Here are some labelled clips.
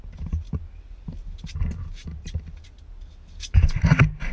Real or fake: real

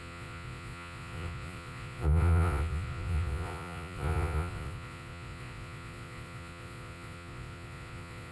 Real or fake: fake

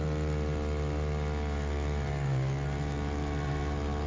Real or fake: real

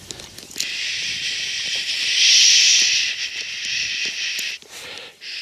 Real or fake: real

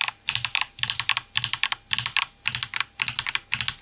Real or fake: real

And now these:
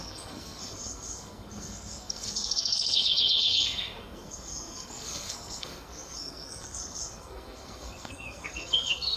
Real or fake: fake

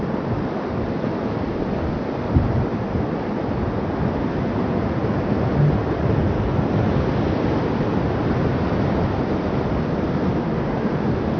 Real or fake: real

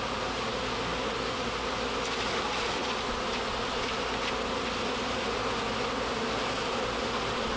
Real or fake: real